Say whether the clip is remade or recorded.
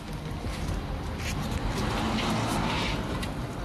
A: recorded